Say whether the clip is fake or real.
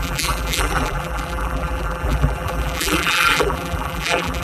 fake